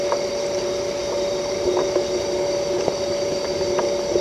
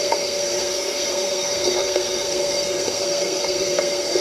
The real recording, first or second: first